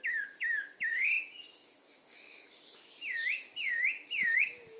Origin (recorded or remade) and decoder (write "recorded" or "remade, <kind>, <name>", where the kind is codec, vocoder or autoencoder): remade, autoencoder, DAC-VAE